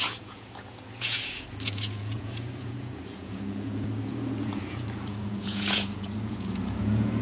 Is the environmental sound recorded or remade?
remade